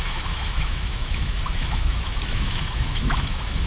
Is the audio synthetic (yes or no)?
yes